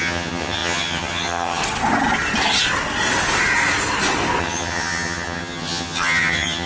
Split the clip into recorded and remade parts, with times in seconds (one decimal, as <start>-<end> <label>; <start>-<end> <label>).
0.0-1.6 remade; 1.6-4.4 recorded; 4.4-6.7 remade